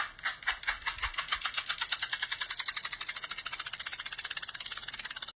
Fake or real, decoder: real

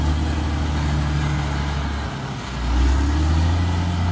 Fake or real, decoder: real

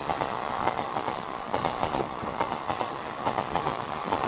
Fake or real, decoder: fake, vocoder, Vocos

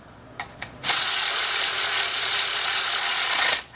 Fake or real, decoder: fake, vocoder, Vocos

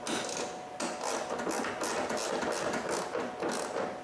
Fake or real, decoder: real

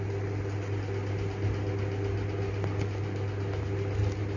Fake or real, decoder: real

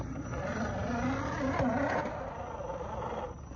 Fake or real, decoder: real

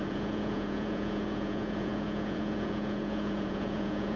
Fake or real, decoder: fake, vocoder, Vocos